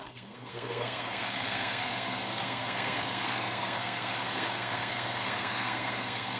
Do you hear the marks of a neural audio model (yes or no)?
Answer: yes